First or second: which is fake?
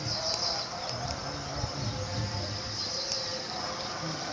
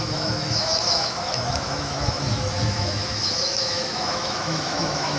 second